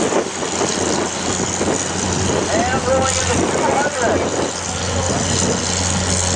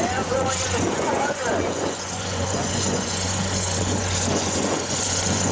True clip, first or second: first